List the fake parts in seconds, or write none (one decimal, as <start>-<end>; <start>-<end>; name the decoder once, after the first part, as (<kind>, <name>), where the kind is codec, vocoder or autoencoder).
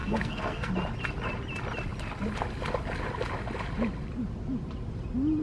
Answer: 0.0-0.7 (codec, SNAC)